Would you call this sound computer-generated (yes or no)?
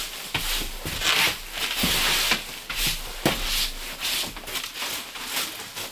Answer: no